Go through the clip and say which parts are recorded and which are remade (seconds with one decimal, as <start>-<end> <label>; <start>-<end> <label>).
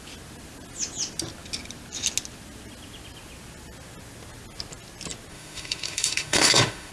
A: 0.0-5.3 recorded; 5.3-6.9 remade